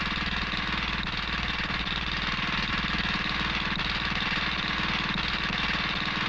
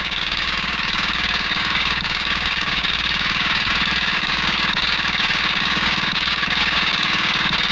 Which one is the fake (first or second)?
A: second